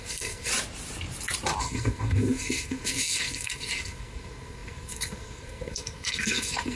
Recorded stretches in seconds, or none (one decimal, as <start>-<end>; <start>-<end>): 0.5-1.6